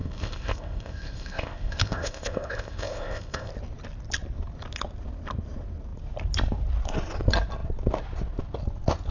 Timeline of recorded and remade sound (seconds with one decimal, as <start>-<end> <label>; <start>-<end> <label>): 0.0-3.5 remade; 3.5-9.1 recorded